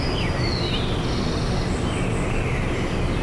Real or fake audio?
real